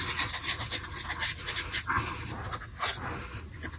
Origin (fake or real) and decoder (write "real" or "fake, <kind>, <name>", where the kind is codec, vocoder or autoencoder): real